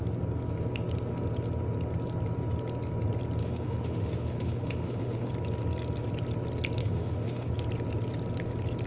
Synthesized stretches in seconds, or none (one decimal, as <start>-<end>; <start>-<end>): 3.4-5.3; 6.8-7.5